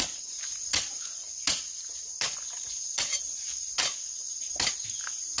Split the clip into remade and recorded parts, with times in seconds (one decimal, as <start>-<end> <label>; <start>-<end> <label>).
0.0-5.4 recorded